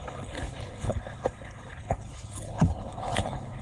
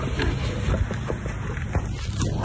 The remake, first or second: first